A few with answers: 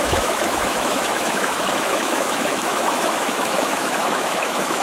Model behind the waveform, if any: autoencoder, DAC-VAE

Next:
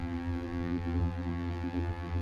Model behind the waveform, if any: vocoder, BigVGAN v2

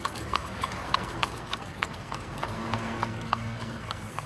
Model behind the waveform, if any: codec, SNAC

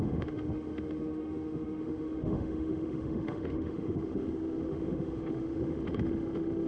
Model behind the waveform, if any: autoencoder, DAC-VAE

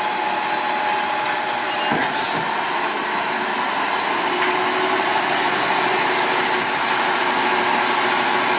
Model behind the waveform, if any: none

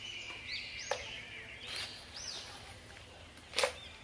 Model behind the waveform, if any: none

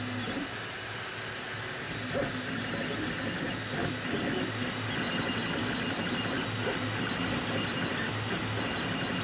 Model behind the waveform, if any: none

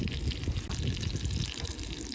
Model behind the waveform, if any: none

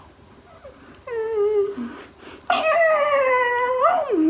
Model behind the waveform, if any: none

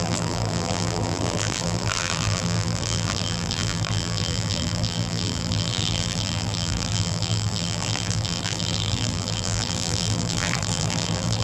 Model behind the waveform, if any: vocoder, BigVGAN v2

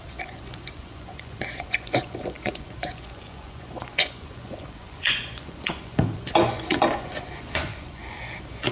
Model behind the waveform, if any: vocoder, Vocos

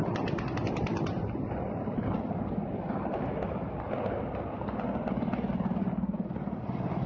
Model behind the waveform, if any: none